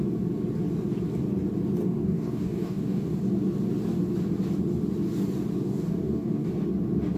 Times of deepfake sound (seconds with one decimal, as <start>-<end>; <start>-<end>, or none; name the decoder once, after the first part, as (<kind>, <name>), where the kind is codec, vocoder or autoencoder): 1.8-3.2 (codec, DAC); 5.6-6.5